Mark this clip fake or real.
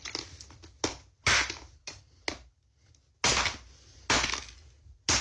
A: real